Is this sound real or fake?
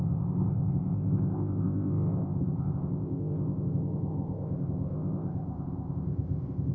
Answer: fake